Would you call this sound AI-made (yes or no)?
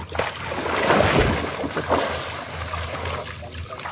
no